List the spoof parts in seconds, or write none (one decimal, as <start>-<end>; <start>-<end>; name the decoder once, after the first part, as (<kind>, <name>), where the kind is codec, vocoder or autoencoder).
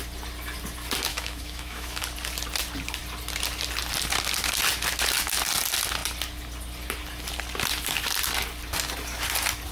1.1-2.0 (autoencoder, DAC-VAE)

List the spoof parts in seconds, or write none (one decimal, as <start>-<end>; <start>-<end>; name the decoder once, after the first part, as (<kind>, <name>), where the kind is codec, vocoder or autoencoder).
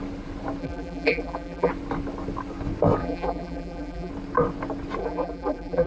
0.6-1.7 (vocoder, BigVGAN v2); 3.0-4.1; 5.0-5.9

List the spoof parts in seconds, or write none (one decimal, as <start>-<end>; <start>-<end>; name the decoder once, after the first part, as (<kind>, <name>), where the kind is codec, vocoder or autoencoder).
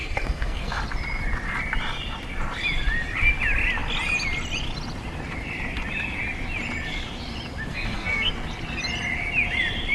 0.0-0.8 (codec, SNAC); 7.7-8.3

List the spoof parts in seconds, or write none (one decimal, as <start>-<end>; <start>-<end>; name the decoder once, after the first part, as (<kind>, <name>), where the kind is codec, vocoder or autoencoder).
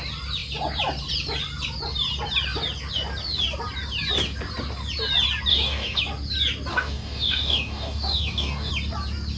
5.5-6.0 (codec, DAC); 6.7-8.7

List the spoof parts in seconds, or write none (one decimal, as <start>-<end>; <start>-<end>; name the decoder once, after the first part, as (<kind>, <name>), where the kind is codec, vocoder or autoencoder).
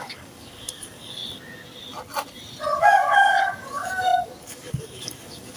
0.0-1.2 (codec, DAC); 2.8-5.6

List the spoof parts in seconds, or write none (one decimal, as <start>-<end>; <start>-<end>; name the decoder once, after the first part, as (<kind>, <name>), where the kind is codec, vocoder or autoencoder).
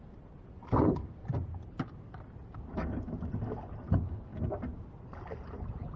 none